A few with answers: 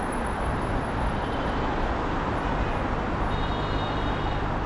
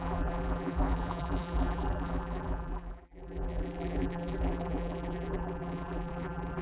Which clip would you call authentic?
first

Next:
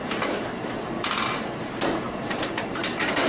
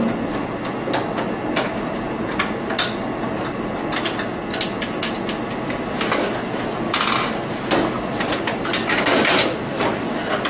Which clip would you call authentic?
second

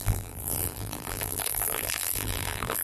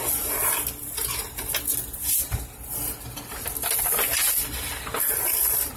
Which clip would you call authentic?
second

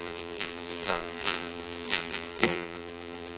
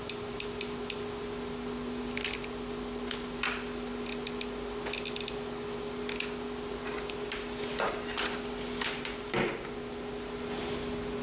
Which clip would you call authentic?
second